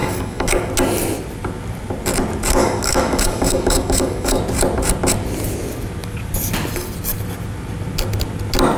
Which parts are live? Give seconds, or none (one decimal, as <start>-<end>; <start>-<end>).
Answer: 0.7-2.6; 4.4-8.8